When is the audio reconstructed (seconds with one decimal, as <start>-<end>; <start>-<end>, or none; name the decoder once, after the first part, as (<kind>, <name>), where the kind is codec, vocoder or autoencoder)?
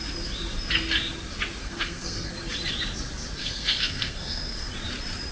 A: 1.6-2.3 (codec, SNAC); 3.4-4.7